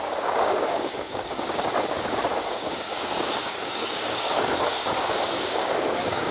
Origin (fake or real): fake